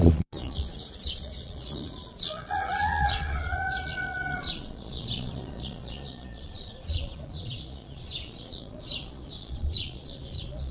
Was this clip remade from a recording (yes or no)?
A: yes